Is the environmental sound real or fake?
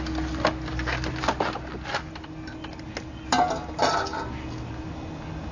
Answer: real